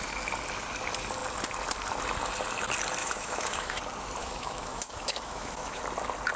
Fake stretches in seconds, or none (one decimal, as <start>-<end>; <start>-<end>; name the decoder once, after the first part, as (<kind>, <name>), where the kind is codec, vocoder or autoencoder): 3.0-3.8 (autoencoder, DAC-VAE); 4.2-5.8